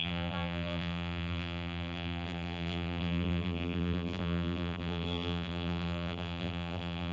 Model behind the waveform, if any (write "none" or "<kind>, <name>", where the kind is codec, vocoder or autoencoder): vocoder, BigVGAN v2